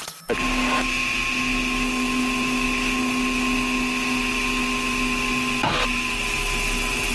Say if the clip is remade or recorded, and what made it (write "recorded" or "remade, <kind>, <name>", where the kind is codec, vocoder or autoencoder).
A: recorded